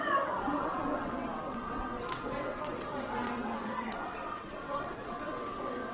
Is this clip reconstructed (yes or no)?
yes